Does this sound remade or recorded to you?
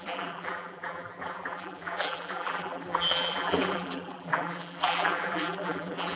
remade